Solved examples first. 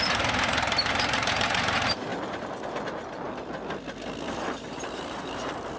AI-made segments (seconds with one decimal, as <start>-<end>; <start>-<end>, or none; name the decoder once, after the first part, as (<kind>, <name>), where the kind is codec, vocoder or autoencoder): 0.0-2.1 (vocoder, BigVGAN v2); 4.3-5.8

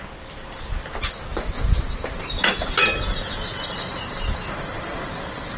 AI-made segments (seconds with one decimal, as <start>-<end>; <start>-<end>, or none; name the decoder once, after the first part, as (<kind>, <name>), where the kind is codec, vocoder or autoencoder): none

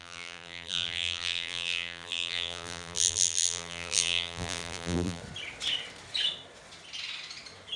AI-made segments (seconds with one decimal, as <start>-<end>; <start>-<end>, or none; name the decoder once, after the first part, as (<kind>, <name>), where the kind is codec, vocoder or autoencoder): 0.0-5.2 (vocoder, BigVGAN v2)

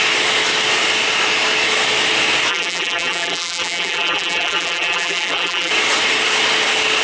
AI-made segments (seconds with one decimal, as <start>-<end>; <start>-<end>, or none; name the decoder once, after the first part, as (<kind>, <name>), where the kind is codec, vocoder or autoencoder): 2.5-5.7 (vocoder, BigVGAN v2)